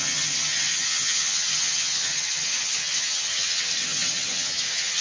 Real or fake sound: fake